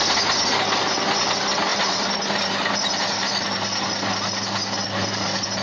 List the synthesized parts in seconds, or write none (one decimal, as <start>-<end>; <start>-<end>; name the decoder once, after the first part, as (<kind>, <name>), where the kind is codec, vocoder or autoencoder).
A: none